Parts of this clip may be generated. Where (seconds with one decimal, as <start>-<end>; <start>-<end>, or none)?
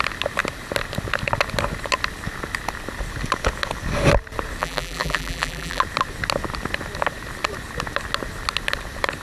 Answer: 4.6-5.8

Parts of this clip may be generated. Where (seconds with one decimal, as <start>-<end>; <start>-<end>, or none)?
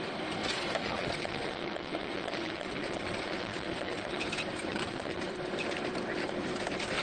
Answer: 0.8-4.2; 4.7-5.3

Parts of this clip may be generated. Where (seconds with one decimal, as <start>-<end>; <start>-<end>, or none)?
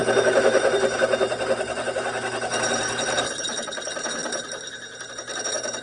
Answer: none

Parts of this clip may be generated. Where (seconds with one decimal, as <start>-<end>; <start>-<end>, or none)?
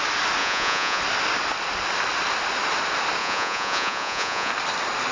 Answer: 0.4-1.0; 3.2-4.5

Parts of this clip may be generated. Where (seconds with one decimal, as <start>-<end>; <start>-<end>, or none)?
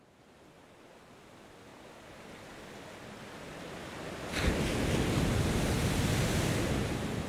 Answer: none